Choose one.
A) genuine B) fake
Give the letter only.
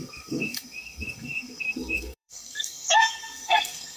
B